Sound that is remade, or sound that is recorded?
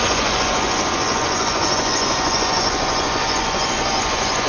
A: remade